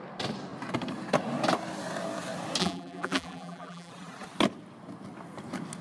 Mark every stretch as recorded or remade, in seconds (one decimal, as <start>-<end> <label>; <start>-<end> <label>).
0.0-2.6 recorded; 2.6-3.9 remade; 3.9-5.8 recorded